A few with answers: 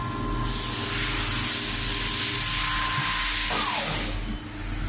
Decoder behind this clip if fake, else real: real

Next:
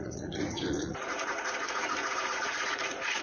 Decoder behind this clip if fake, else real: fake, vocoder, Vocos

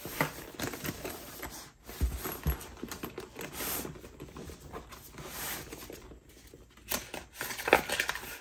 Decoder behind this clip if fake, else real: real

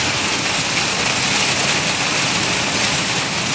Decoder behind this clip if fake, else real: real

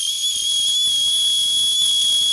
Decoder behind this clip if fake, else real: real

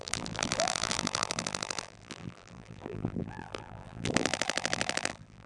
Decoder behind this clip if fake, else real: fake, vocoder, BigVGAN v2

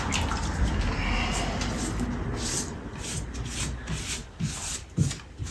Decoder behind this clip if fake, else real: real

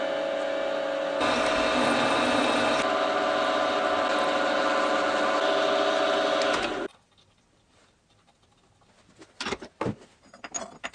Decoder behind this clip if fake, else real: real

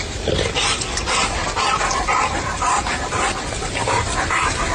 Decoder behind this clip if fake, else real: fake, vocoder, BigVGAN v2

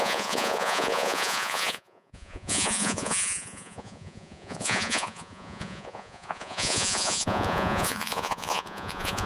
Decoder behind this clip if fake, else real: fake, vocoder, Vocos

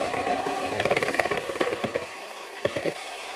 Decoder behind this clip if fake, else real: fake, codec, SNAC